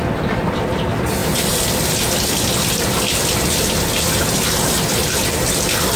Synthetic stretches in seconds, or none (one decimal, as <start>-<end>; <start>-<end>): none